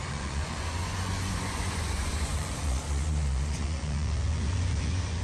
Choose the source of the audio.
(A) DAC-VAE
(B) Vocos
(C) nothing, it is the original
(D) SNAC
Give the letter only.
B